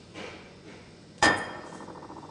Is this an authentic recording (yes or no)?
no